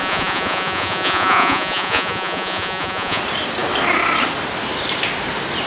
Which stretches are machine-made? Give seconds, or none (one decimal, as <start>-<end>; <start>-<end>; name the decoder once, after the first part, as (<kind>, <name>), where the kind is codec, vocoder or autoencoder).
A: 0.0-3.2 (vocoder, Vocos)